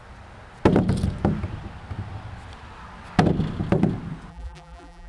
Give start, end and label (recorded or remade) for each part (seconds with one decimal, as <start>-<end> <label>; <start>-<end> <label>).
0.0-4.3 recorded; 4.3-5.1 remade